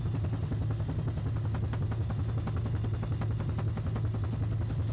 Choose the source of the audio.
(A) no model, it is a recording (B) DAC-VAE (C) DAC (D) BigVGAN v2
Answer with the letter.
A